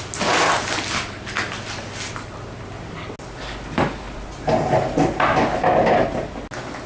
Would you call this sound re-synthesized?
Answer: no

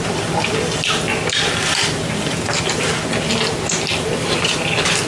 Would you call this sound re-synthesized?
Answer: no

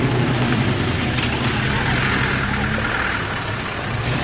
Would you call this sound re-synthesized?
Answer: no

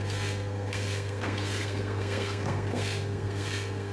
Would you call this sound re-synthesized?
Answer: yes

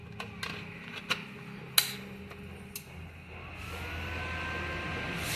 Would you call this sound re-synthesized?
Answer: no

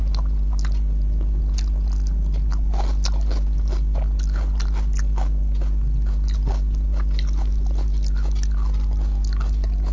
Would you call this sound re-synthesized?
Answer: no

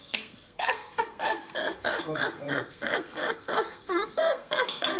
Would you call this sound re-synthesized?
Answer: yes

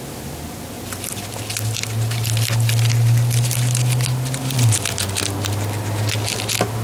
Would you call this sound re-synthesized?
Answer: no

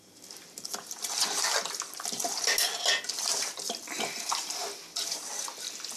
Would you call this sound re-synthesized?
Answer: no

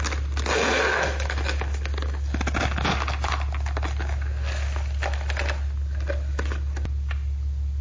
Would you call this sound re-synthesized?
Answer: no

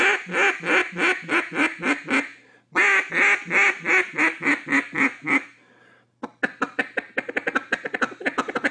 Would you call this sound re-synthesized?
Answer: no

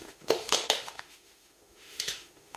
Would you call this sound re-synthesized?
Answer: yes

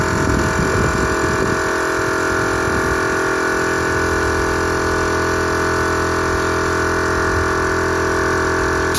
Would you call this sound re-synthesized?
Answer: no